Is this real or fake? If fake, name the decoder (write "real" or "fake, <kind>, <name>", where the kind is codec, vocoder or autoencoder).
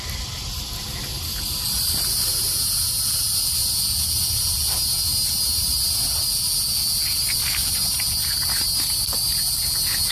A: real